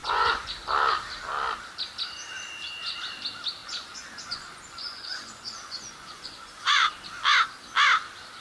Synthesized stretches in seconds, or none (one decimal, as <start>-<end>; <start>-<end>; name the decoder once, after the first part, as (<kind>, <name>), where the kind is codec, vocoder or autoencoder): 0.0-0.5 (vocoder, Vocos); 3.6-7.0